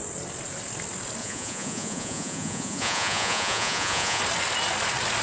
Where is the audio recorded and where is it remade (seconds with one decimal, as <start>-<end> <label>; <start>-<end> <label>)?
0.0-1.2 recorded; 1.2-4.2 remade; 4.2-5.2 recorded